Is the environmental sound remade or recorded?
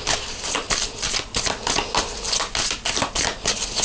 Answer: recorded